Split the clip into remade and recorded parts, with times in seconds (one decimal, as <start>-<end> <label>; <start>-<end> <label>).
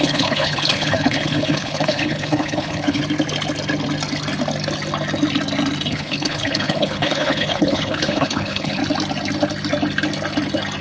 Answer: 0.0-3.0 remade; 3.0-5.9 recorded; 5.9-8.8 remade; 8.8-10.8 recorded